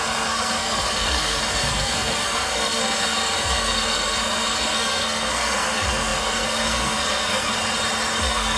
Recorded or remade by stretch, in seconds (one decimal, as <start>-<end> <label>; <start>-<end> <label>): 0.0-7.5 remade; 7.5-8.2 recorded; 8.2-8.6 remade